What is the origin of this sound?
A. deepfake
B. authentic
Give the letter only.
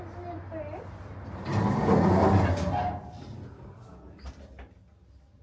B